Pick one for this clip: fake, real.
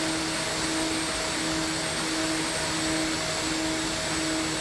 real